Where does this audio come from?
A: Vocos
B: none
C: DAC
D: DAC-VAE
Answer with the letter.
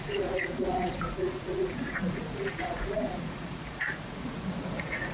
A